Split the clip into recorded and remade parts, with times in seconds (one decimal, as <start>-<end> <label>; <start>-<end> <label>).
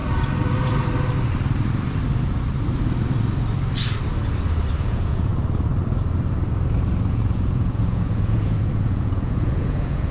0.0-4.8 recorded; 4.8-5.3 remade; 5.3-7.1 recorded; 7.1-10.1 remade